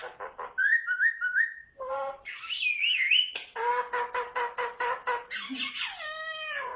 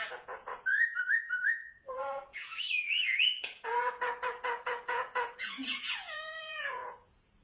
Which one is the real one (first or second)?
first